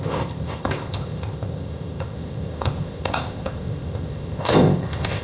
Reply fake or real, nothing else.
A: fake